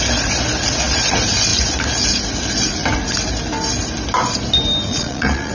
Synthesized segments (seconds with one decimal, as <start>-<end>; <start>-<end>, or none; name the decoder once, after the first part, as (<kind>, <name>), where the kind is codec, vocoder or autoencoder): 4.9-5.5 (vocoder, Vocos)